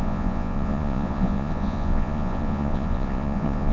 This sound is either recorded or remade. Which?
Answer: remade